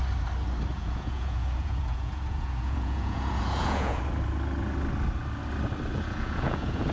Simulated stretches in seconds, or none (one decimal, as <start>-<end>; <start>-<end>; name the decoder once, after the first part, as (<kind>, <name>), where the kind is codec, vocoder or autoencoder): 0.7-4.0 (vocoder, Vocos); 5.9-6.9